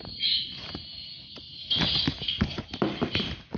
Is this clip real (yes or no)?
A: yes